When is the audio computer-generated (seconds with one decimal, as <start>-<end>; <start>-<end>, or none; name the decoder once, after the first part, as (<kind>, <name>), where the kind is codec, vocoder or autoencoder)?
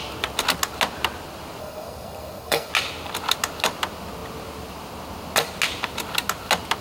1.6-2.7 (codec, SNAC)